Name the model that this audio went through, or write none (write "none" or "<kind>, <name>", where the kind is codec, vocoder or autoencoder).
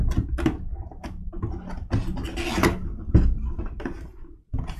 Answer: none